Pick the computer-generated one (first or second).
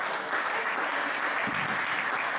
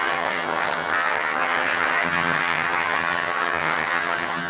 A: second